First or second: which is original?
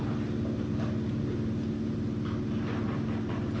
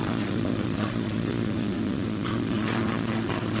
first